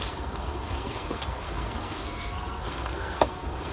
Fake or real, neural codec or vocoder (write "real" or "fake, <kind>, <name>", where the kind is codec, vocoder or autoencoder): fake, codec, SNAC